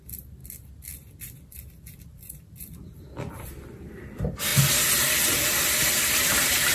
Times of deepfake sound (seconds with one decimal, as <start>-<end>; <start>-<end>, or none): 0.0-0.4; 1.5-6.7